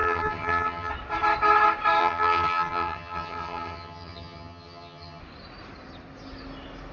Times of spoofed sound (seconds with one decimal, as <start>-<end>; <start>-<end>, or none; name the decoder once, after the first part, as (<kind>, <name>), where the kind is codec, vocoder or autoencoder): 0.0-0.9 (vocoder, HiFi-GAN); 2.0-5.2